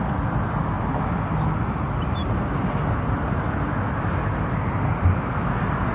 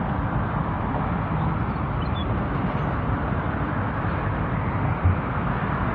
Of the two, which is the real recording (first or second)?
first